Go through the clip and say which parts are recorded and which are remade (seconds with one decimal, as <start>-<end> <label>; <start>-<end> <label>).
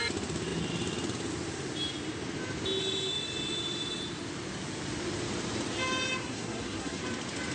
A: 0.0-6.2 recorded; 6.2-7.0 remade; 7.0-7.5 recorded